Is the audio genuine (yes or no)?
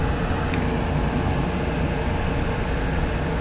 yes